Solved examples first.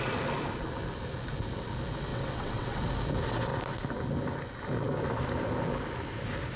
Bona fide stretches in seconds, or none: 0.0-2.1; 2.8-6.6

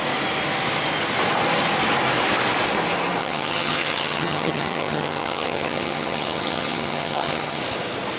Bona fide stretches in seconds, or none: 0.0-3.2; 7.6-8.2

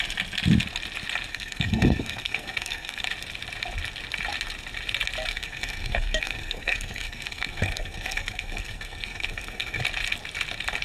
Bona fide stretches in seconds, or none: 0.0-1.3; 3.0-5.3; 9.8-10.8

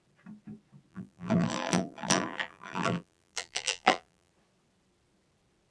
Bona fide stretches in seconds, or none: 0.0-0.9; 4.3-5.7

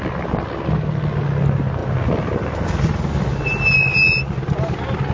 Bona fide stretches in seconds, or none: 0.0-5.1

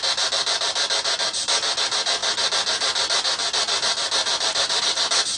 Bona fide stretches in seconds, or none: 0.0-5.4